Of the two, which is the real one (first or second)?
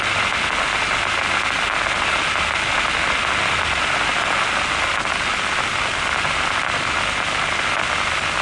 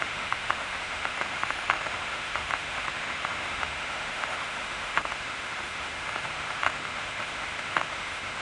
first